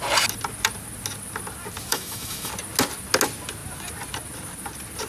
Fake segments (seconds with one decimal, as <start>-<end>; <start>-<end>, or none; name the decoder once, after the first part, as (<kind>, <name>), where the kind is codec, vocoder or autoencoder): 1.9-2.5 (autoencoder, DAC-VAE)